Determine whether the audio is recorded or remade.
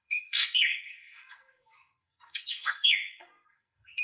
remade